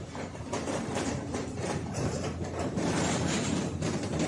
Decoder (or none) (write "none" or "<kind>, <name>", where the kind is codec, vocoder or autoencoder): vocoder, BigVGAN v2